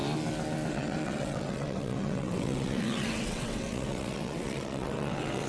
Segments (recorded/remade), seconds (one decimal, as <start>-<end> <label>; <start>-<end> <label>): 0.0-0.7 recorded; 0.7-5.5 remade

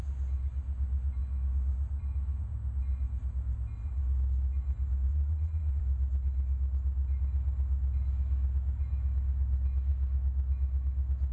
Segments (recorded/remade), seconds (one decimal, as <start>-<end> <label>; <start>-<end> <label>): 0.0-5.1 recorded; 5.1-5.8 remade; 5.8-11.3 recorded

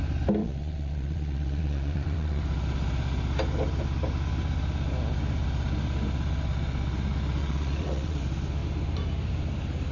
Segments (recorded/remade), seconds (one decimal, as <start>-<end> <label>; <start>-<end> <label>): 0.0-0.4 recorded; 0.4-2.4 remade; 2.4-7.4 recorded; 7.4-8.2 remade; 8.2-9.9 recorded